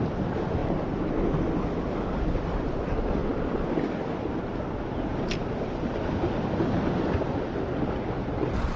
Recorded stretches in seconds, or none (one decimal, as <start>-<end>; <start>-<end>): 0.0-8.8

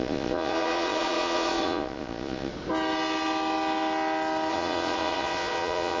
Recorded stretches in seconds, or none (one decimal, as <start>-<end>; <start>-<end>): 2.5-4.5